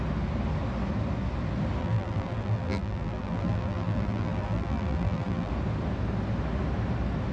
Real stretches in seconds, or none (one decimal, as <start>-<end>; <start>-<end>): 0.0-1.8; 5.5-7.3